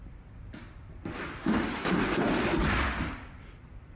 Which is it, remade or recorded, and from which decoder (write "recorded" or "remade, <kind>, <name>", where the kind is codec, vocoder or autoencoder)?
remade, vocoder, BigVGAN v2